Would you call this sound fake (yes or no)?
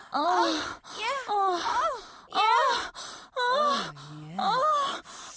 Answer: no